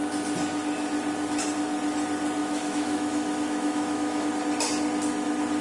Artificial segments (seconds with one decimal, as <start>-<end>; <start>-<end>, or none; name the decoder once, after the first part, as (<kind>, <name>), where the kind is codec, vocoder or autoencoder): 2.4-4.3 (autoencoder, DAC-VAE)